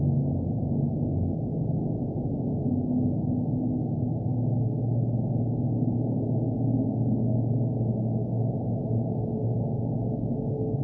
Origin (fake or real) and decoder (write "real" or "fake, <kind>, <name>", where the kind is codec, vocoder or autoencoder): real